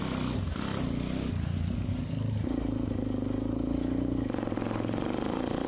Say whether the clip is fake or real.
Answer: real